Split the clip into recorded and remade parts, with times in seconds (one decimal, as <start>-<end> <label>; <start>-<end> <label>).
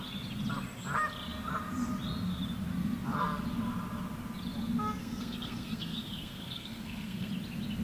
0.0-5.0 recorded; 5.0-7.3 remade; 7.3-7.8 recorded